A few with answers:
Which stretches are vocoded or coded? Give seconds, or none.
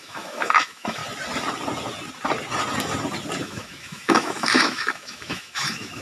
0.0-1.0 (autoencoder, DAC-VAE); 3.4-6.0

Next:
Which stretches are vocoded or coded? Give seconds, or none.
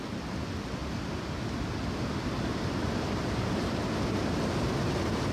none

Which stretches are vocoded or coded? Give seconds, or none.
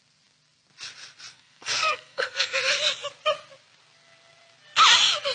1.3-2.6 (codec, SNAC)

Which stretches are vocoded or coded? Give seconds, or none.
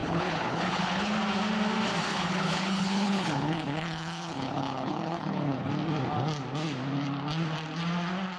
0.0-1.1 (codec, HILCodec); 2.1-5.7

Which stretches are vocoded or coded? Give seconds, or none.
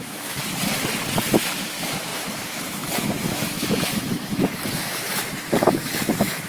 0.0-0.4 (autoencoder, DAC-VAE); 1.3-6.5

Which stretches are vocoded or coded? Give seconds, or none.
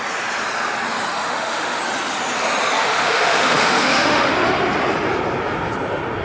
1.1-1.8 (autoencoder, DAC-VAE); 2.9-4.3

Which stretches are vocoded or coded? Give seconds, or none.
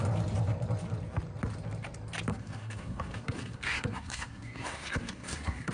2.3-5.7 (codec, SNAC)